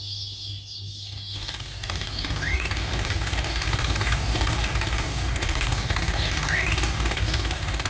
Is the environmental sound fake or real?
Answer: fake